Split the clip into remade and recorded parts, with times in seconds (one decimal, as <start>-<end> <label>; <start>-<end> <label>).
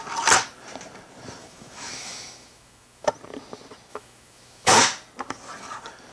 0.0-1.4 recorded; 1.4-3.1 remade; 3.1-3.9 recorded; 3.9-4.7 remade; 4.7-6.1 recorded